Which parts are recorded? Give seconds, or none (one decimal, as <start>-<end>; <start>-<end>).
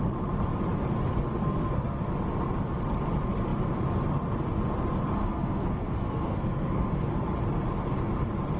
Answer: 0.0-1.4; 2.1-5.2; 6.9-8.6